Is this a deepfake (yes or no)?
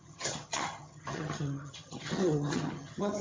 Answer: yes